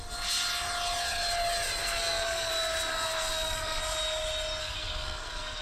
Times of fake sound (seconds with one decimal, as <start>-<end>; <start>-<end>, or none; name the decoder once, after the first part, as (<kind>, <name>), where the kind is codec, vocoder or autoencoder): 1.8-2.5 (codec, SNAC); 2.9-3.8; 4.6-5.6